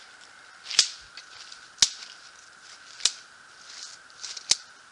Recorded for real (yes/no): yes